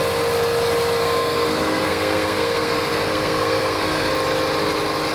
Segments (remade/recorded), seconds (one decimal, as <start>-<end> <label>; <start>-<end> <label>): 0.0-1.0 recorded; 1.0-4.1 remade; 4.1-5.1 recorded